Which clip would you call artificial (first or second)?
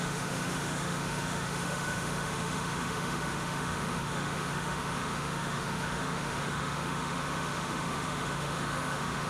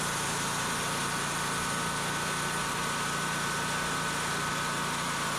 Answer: first